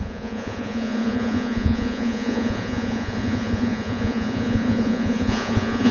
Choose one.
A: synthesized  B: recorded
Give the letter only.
A